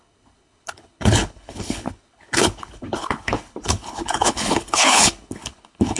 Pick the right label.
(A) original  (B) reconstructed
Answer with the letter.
B